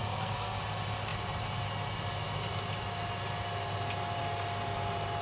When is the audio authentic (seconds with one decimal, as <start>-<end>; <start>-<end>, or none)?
0.6-5.2